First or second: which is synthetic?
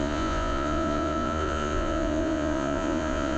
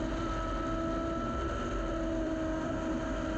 first